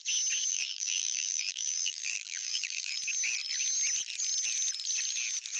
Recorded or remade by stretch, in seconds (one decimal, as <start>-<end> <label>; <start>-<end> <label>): 0.0-0.5 recorded; 0.5-2.9 remade; 2.9-5.6 recorded